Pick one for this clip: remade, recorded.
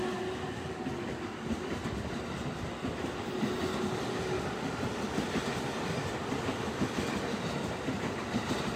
recorded